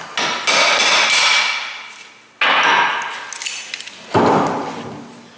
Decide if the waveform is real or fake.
real